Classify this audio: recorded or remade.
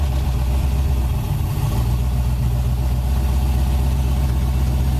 recorded